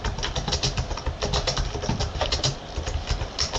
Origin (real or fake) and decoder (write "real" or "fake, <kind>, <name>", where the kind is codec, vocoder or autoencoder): real